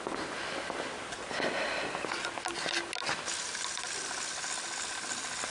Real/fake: real